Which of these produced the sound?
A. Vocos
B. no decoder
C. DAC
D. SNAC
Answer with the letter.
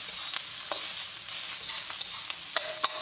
B